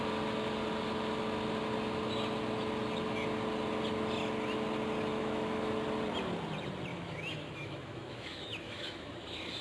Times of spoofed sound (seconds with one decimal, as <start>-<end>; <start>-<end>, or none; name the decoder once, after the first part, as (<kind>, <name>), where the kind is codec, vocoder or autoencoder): 5.1-5.7 (autoencoder, DAC-VAE); 6.9-9.6